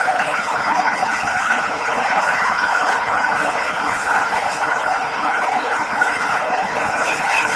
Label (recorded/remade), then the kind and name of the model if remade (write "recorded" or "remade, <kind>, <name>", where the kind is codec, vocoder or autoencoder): remade, codec, HILCodec